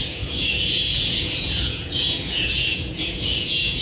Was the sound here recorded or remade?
remade